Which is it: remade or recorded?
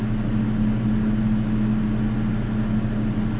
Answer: recorded